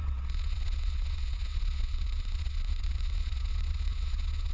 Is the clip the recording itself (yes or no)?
no